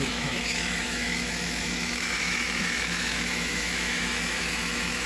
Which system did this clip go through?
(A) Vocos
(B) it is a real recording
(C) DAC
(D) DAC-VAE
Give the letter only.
D